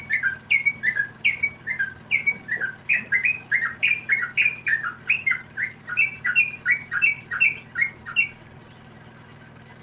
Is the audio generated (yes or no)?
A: no